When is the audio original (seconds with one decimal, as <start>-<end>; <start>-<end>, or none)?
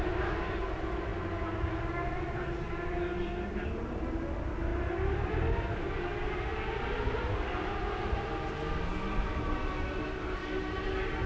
0.0-11.3